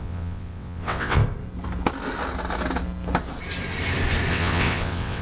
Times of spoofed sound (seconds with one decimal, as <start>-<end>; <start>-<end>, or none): 0.0-1.2; 4.3-5.2